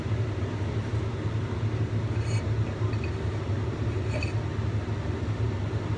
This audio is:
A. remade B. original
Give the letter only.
B